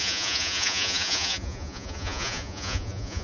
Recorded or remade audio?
remade